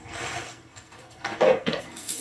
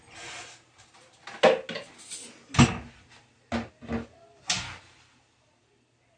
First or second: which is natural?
second